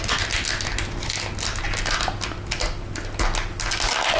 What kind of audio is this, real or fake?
real